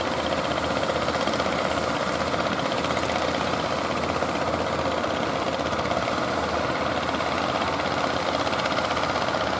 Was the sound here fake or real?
real